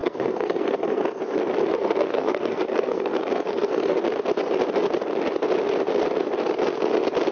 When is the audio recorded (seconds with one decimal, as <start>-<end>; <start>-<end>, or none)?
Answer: 1.2-1.7; 4.0-7.3